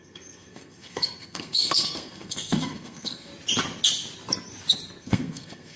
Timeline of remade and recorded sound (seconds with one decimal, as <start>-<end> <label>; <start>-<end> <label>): 0.0-3.3 remade; 3.3-5.0 recorded; 5.0-5.8 remade